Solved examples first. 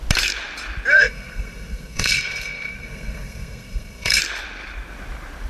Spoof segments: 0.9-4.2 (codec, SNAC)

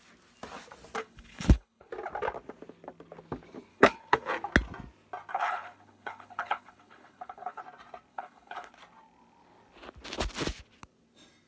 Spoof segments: 1.0-1.9 (codec, HILCodec); 3.7-4.3; 5.3-7.6; 8.1-8.7

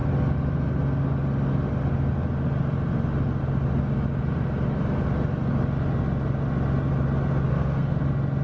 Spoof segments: 7.5-8.0 (codec, SNAC)